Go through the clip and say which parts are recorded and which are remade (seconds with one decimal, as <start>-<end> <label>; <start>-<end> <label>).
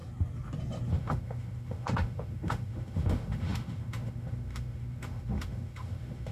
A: 0.0-0.9 recorded; 0.9-6.3 remade